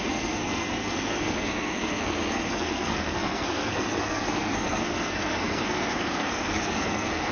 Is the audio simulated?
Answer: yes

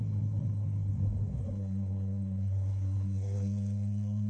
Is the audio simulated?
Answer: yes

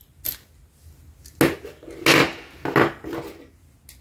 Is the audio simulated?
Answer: no